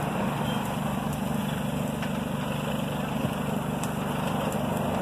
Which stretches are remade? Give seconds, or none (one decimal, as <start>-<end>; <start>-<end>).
none